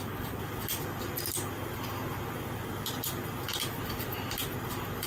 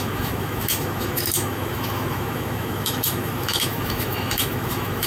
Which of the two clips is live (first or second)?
first